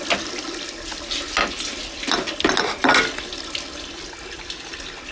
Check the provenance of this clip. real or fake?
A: real